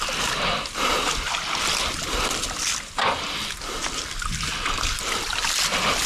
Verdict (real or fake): real